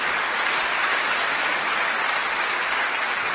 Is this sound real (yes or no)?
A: yes